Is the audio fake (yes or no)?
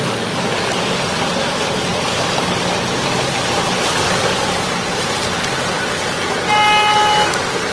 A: no